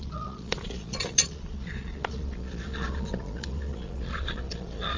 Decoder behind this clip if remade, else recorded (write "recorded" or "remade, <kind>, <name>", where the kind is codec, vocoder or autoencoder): remade, vocoder, Vocos